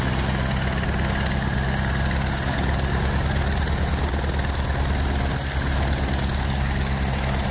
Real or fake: real